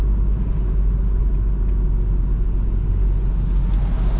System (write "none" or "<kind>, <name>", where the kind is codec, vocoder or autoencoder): none